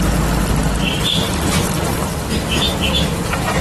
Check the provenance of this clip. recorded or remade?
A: recorded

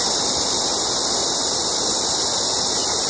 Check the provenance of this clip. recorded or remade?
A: recorded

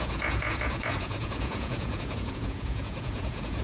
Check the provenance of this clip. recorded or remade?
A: remade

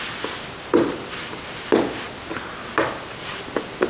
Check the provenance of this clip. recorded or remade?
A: recorded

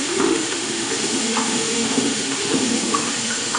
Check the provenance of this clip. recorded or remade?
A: remade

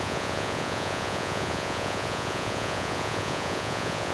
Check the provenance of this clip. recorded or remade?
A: remade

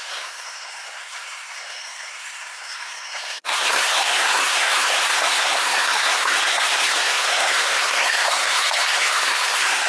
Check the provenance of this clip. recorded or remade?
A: remade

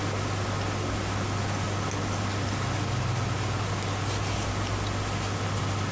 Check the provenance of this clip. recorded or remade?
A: recorded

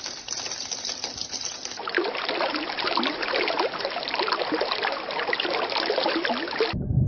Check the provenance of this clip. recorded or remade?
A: remade